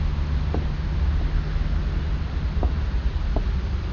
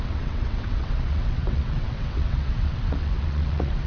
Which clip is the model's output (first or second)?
second